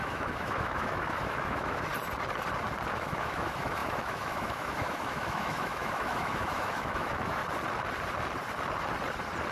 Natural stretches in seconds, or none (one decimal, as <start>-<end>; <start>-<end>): 1.9-2.9; 7.4-9.5

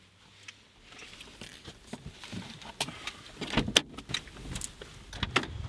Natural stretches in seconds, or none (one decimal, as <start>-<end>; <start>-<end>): 0.0-5.7

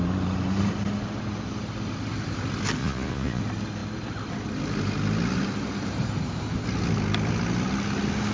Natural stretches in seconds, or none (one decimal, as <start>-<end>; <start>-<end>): 0.0-2.8; 3.4-8.3

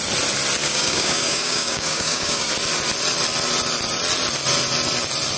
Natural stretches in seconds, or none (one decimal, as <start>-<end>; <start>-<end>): 0.0-0.6; 2.5-5.4

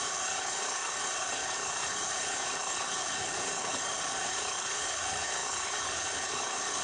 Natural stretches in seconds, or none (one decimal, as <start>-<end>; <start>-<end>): none

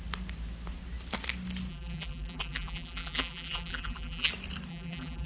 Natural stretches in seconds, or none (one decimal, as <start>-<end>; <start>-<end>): 0.0-1.7; 4.3-4.7